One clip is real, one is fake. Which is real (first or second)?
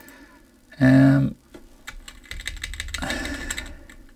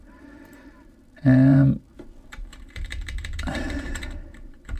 first